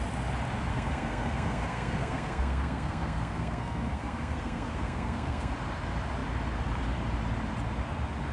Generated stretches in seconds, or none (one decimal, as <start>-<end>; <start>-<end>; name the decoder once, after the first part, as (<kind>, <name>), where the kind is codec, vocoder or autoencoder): 0.7-5.5 (codec, SNAC)